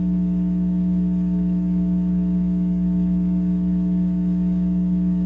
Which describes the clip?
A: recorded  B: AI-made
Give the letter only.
B